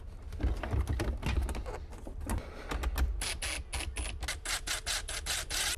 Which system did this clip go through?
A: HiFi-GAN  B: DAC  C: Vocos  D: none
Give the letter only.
D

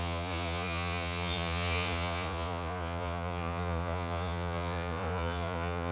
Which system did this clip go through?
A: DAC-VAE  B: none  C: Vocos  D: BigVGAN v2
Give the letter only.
C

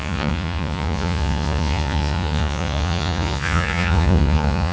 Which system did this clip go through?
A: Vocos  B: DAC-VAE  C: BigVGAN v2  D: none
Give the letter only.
A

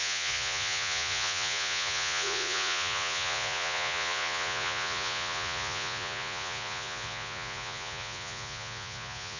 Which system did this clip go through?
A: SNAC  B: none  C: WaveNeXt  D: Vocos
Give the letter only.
D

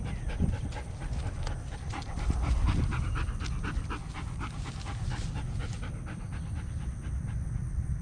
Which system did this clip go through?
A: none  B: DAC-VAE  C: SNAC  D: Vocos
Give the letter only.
A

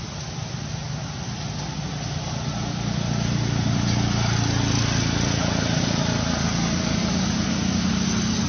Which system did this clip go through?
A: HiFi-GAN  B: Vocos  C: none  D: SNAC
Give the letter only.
C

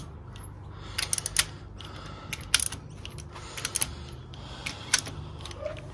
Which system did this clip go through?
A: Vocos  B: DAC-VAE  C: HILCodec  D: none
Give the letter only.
D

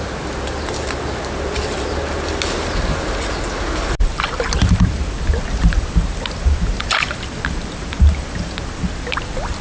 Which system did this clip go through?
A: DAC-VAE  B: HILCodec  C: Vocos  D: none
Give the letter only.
D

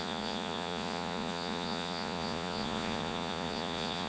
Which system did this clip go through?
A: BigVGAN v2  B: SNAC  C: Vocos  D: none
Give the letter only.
C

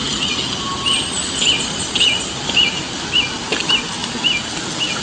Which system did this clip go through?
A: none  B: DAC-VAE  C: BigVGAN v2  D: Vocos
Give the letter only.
A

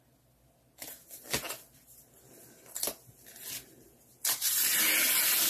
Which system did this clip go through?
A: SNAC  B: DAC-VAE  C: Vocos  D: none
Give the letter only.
D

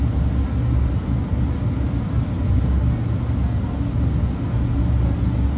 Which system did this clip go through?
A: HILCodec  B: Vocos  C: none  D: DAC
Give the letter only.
C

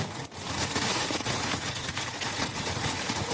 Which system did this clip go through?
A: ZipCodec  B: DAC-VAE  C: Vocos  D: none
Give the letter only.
C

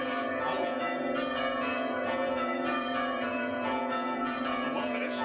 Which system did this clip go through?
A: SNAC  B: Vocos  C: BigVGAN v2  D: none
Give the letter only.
B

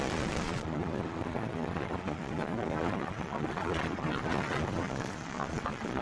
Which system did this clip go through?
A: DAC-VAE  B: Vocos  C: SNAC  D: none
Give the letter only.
B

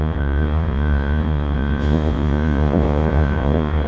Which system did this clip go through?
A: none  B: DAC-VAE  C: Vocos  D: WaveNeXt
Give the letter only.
C